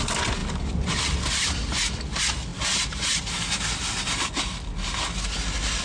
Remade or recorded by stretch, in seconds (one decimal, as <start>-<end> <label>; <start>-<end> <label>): 0.0-2.5 recorded; 2.5-3.2 remade; 3.2-5.8 recorded